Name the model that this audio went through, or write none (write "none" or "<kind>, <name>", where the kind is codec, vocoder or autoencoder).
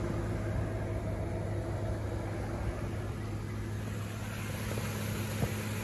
none